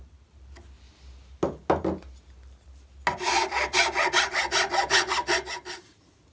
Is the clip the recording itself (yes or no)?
yes